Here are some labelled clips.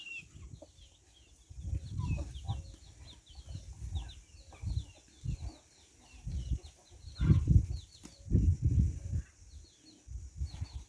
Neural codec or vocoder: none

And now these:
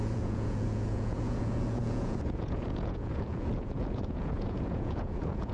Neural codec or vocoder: vocoder, Vocos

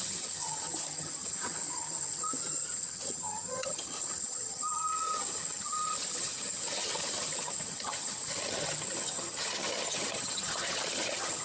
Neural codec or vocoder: vocoder, HiFi-GAN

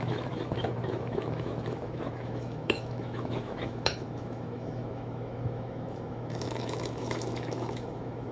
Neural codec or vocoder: autoencoder, DAC-VAE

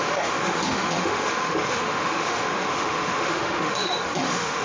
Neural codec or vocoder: autoencoder, DAC-VAE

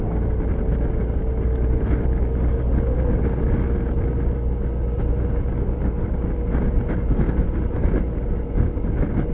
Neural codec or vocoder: none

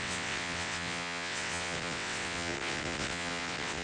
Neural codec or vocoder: vocoder, WaveNeXt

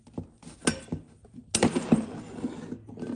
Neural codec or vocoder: none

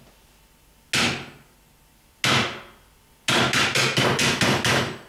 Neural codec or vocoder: none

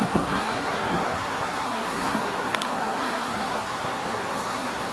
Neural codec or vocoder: codec, SNAC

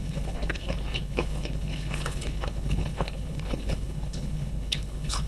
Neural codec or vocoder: codec, HILCodec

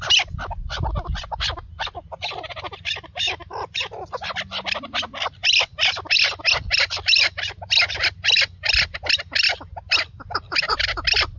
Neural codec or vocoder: none